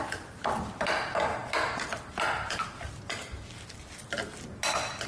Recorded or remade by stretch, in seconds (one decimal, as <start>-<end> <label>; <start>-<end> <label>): 0.0-5.1 recorded